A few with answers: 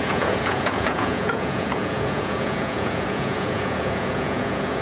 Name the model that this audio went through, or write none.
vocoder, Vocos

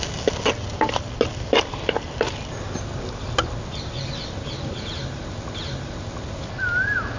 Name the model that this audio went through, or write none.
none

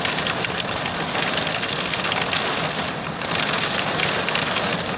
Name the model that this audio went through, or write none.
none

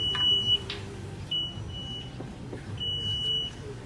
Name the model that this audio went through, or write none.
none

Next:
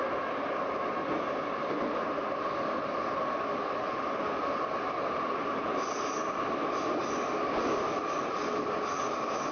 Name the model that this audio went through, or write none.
none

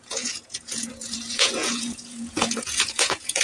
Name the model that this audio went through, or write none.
vocoder, Vocos